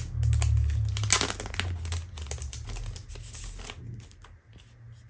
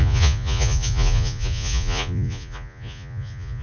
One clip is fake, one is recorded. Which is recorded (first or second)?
first